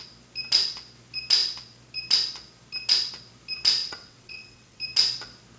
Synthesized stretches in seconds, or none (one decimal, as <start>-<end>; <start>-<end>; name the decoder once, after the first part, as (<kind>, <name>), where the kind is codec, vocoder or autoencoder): 3.8-4.8 (vocoder, WaveNeXt)